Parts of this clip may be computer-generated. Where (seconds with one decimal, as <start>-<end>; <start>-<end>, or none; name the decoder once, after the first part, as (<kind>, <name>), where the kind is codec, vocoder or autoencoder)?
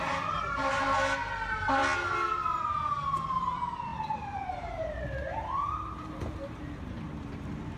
0.0-1.8 (vocoder, BigVGAN v2); 3.3-7.8